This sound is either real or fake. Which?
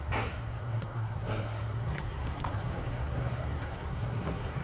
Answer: fake